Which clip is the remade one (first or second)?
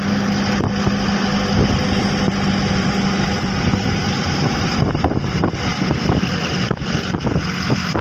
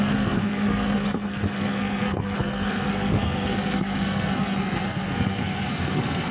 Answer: second